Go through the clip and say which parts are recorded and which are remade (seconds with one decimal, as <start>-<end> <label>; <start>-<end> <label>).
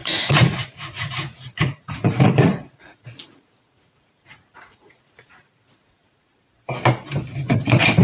0.0-6.3 remade; 6.3-7.3 recorded; 7.3-8.0 remade